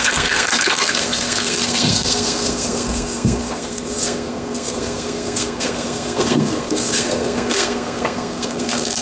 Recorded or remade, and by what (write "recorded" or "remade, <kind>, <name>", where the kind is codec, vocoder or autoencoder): remade, codec, SNAC